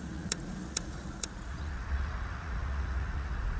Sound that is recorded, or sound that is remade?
remade